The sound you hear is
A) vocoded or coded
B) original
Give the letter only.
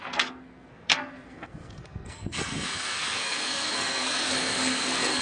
A